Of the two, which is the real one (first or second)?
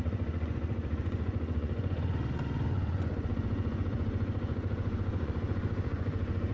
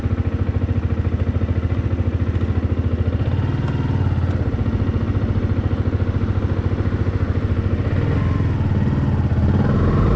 second